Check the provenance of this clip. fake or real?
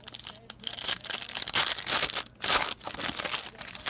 real